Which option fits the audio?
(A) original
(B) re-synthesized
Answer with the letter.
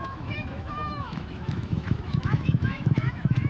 B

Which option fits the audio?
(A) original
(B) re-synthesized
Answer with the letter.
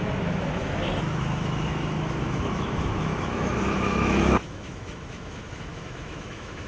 B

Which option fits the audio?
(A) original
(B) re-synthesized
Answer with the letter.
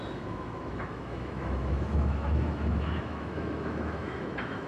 B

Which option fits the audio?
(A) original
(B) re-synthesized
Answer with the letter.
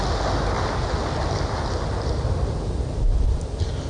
A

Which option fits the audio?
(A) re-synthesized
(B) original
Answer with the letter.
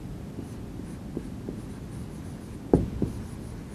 B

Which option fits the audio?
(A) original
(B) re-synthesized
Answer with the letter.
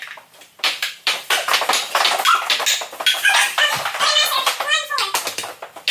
A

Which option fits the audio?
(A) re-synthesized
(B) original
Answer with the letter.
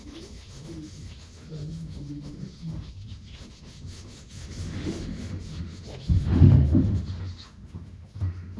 A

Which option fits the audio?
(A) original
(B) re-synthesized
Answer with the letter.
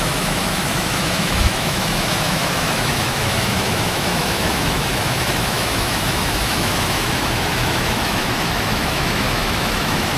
B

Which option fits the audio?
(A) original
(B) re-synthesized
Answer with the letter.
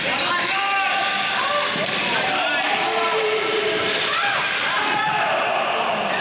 A